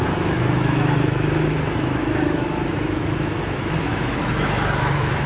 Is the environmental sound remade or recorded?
remade